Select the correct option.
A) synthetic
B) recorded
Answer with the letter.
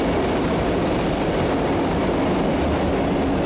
B